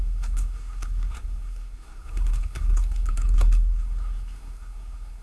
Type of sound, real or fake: fake